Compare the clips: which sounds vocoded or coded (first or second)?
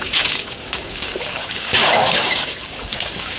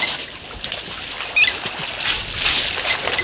first